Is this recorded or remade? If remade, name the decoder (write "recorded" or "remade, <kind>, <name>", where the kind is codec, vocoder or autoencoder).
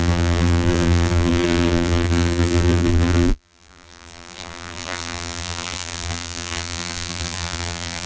remade, vocoder, BigVGAN v2